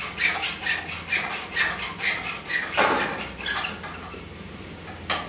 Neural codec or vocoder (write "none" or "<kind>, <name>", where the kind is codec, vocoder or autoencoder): none